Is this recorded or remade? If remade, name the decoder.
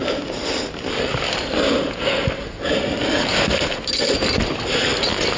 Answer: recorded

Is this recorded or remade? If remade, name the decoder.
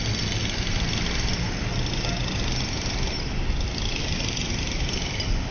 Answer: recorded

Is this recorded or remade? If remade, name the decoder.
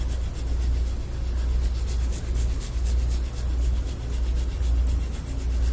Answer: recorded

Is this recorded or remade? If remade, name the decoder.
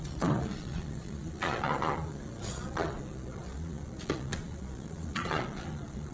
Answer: remade, vocoder, Vocos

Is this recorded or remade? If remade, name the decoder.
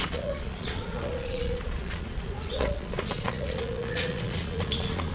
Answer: remade, vocoder, Vocos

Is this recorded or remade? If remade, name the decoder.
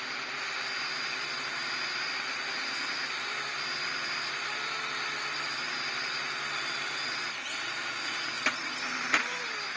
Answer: recorded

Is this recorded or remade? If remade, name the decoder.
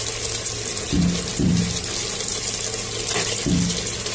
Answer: recorded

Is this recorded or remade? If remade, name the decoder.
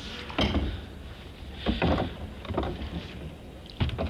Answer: recorded